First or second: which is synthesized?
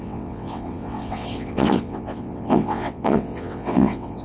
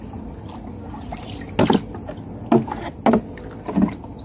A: first